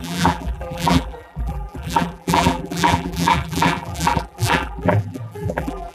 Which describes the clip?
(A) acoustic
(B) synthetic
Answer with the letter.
B